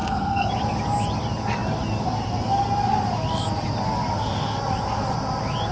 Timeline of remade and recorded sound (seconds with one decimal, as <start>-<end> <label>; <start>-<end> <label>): 0.0-0.5 remade; 0.5-5.7 recorded